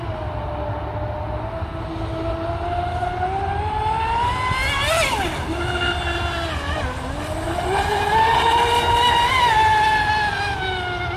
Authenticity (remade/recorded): recorded